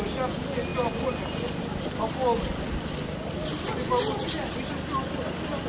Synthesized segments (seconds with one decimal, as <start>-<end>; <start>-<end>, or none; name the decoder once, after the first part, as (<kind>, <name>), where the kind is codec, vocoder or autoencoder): none